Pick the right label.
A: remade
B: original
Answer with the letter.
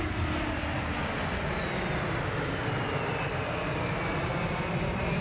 B